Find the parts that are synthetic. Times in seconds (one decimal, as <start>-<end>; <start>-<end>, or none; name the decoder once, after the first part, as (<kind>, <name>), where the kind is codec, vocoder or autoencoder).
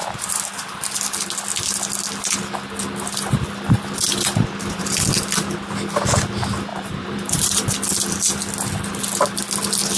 6.7-7.8 (vocoder, BigVGAN v2)